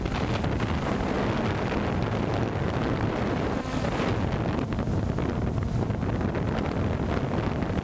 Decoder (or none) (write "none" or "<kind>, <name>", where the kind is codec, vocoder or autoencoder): none